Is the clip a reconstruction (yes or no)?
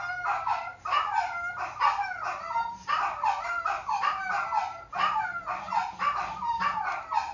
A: no